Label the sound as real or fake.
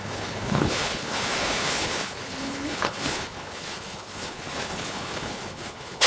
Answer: fake